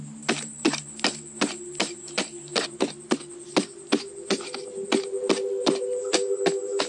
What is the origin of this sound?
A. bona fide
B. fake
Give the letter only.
A